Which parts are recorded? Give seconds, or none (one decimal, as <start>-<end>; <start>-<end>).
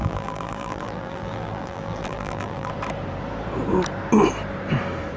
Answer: 2.7-5.2